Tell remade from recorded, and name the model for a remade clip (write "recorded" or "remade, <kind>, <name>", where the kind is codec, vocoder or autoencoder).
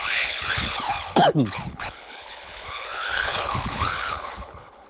remade, codec, HILCodec